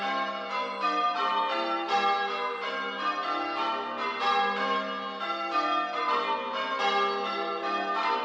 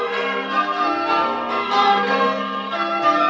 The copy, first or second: second